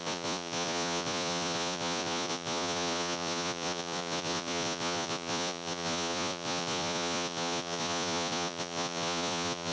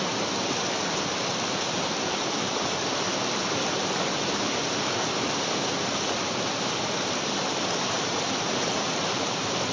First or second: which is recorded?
second